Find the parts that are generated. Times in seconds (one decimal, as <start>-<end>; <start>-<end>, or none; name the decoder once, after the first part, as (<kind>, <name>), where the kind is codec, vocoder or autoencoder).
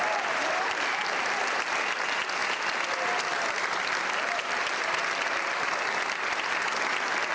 none